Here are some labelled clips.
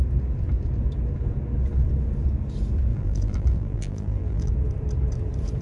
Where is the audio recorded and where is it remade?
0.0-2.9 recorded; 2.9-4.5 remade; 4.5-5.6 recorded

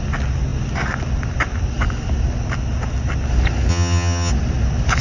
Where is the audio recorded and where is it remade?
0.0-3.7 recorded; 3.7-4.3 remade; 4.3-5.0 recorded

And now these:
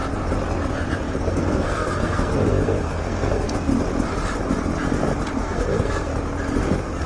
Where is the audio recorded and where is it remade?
0.0-1.2 recorded; 1.2-3.7 remade; 3.7-5.4 recorded; 5.4-6.1 remade; 6.1-6.6 recorded; 6.6-7.1 remade

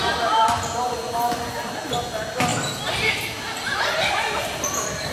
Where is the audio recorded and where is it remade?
0.0-5.1 recorded

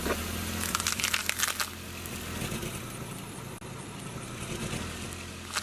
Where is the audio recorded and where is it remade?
0.0-5.6 recorded